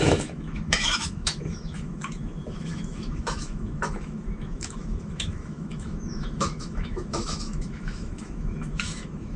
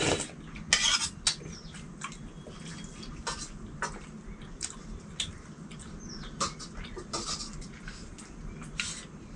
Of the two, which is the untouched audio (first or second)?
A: second